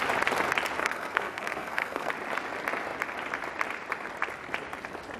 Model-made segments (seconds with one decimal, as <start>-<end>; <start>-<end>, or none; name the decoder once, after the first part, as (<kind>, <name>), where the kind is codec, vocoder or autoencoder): 0.8-2.1 (codec, SNAC)